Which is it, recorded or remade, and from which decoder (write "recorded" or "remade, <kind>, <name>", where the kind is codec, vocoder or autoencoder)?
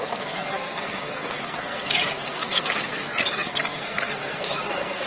remade, codec, SNAC